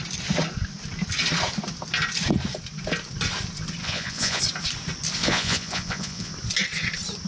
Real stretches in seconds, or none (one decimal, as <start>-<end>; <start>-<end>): 0.0-3.8; 4.4-5.2; 6.3-7.3